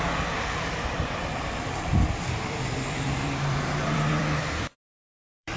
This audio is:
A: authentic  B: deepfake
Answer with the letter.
B